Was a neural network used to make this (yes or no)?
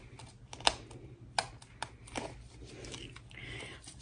no